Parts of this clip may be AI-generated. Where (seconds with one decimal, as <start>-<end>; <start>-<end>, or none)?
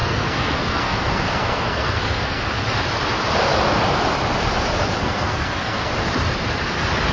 0.0-2.4; 5.0-5.9